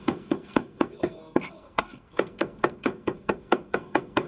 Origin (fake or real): fake